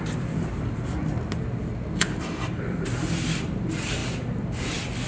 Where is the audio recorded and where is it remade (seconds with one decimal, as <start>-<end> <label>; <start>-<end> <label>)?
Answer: 0.0-1.0 remade; 1.0-1.9 recorded; 1.9-4.0 remade; 4.0-5.1 recorded